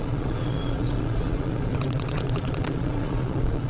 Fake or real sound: fake